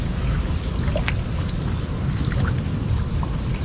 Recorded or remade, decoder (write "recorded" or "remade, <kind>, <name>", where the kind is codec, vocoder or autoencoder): recorded